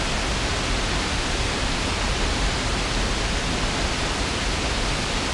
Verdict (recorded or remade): recorded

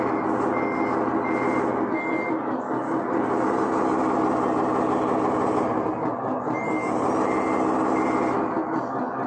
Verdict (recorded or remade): recorded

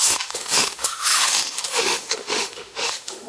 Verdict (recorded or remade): remade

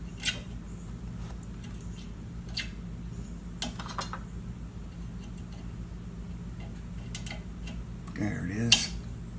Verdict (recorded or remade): recorded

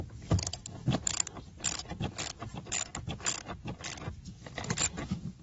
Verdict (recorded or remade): recorded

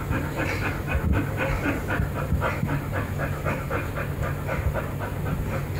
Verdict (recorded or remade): recorded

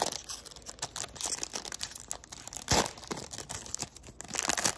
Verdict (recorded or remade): recorded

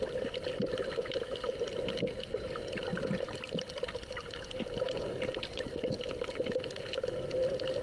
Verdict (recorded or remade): recorded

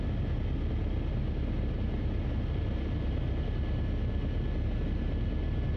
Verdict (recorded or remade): recorded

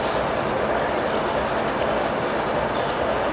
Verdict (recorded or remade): recorded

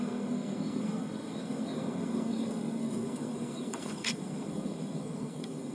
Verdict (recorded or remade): remade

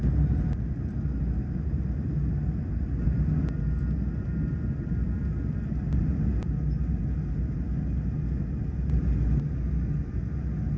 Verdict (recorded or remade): recorded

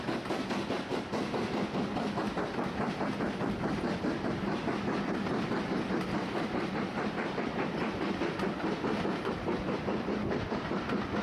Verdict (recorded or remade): remade